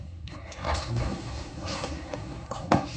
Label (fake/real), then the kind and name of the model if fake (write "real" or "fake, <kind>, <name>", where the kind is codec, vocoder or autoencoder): fake, codec, SNAC